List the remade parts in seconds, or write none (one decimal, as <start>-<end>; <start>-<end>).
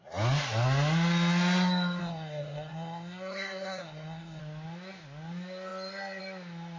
2.0-4.4